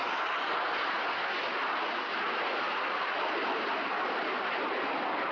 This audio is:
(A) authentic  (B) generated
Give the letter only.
A